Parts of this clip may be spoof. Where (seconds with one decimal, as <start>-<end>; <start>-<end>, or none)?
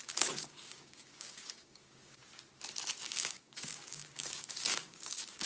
0.0-2.2; 3.0-5.5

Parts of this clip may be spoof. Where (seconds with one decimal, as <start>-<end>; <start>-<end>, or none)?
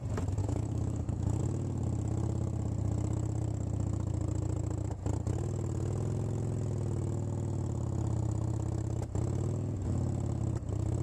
0.4-1.4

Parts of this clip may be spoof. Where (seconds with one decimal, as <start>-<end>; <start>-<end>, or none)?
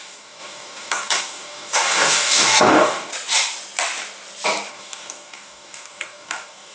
0.0-3.1; 4.7-6.7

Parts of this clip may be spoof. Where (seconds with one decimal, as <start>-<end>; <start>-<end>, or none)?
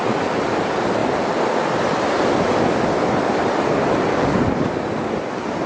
4.1-4.7